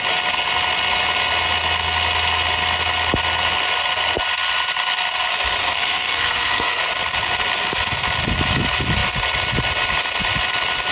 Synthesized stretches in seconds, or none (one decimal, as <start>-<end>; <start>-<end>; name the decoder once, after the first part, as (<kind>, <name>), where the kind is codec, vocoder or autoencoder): 5.6-6.8 (codec, SNAC)